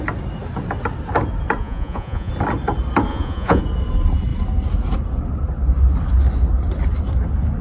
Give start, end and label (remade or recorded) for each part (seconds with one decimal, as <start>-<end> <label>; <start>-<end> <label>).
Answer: 0.0-1.6 recorded; 1.6-2.3 remade; 2.3-3.1 recorded; 3.1-3.6 remade; 3.6-7.6 recorded